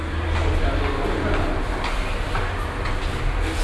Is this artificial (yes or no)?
no